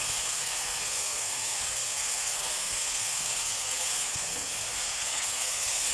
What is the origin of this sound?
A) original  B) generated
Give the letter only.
B